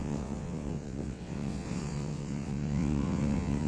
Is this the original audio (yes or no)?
no